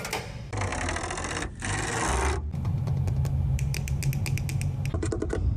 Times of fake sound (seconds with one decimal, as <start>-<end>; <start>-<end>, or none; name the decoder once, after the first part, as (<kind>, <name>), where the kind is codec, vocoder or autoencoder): 0.0-4.0 (vocoder, BigVGAN v2); 4.9-5.6